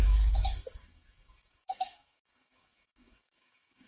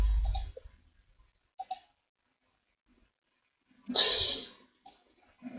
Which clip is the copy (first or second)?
first